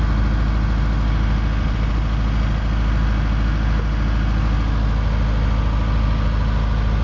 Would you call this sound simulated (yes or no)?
no